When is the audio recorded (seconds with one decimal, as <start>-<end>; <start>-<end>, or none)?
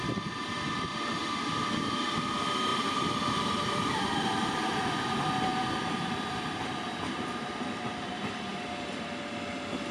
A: 0.0-2.7; 4.6-5.5; 6.7-8.5; 9.1-9.9